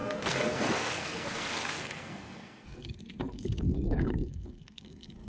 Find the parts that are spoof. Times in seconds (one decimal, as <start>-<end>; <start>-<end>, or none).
0.0-5.3